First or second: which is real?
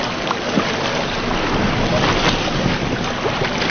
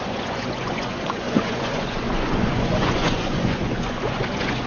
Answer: first